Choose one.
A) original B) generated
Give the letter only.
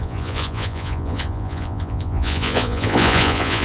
B